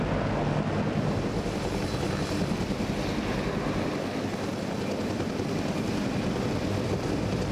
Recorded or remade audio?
recorded